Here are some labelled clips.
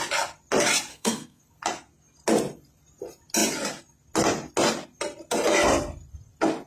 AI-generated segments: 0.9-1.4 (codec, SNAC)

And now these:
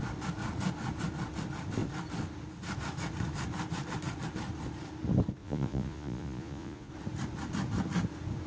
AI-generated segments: 5.4-6.9 (vocoder, Vocos)

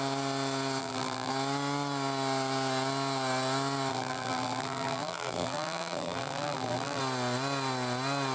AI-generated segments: 0.8-1.3 (vocoder, BigVGAN v2); 3.9-7.0

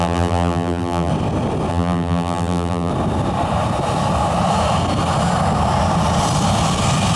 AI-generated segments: 0.0-1.1 (vocoder, BigVGAN v2); 1.7-2.9

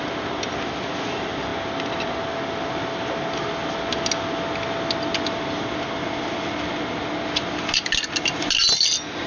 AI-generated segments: none

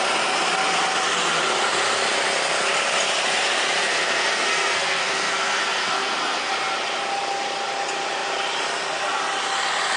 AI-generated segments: 3.8-6.5 (codec, SNAC)

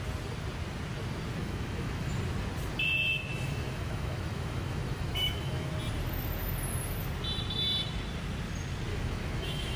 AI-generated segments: 1.4-2.1 (autoencoder, DAC-VAE); 3.3-5.7; 8.9-9.8

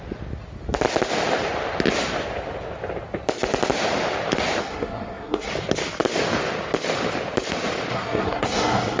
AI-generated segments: 4.6-5.5 (codec, SNAC); 7.9-9.0